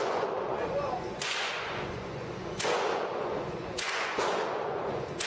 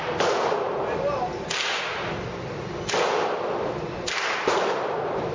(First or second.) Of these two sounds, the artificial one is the first